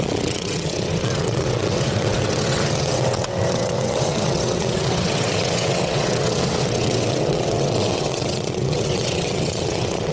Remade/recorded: remade